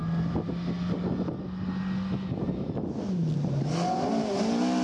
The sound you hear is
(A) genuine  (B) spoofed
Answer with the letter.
A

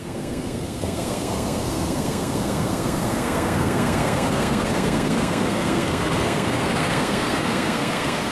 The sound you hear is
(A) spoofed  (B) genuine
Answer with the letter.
A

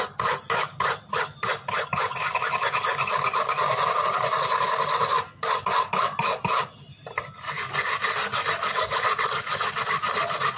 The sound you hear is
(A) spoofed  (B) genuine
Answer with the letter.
B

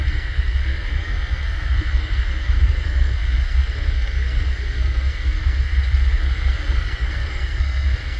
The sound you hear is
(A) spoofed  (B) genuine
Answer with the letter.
A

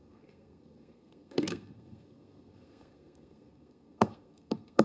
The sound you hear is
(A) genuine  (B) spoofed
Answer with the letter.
B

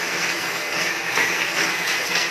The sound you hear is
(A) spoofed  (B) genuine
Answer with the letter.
A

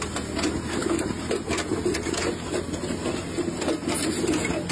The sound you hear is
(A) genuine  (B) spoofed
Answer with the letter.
A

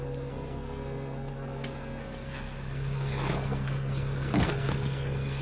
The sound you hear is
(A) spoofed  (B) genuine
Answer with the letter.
A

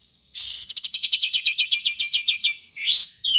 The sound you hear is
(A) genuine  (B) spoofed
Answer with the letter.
B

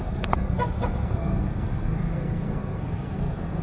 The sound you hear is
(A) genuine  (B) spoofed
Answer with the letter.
B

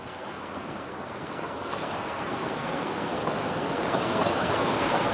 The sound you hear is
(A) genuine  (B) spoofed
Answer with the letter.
B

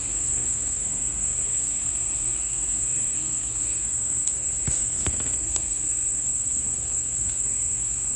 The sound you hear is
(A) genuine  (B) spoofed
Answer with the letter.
B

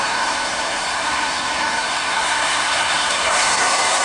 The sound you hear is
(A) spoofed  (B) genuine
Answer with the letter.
A